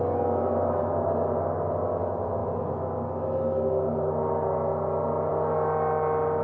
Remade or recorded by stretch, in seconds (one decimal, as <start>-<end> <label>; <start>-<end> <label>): 0.0-6.4 recorded